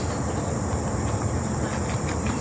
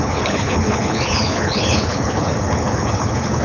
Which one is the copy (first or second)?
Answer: second